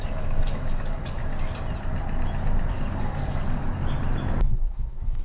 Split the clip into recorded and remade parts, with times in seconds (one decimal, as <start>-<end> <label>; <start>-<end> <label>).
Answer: 0.0-1.2 remade; 1.2-2.7 recorded; 2.7-3.8 remade; 3.8-4.5 recorded; 4.5-5.2 remade